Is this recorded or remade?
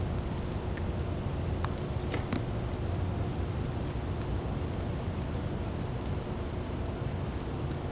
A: recorded